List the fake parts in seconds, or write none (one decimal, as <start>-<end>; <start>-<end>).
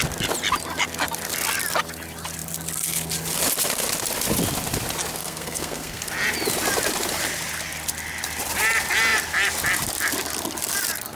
5.2-6.0